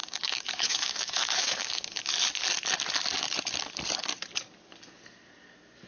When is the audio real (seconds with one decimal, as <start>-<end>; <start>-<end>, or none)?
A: 2.1-5.9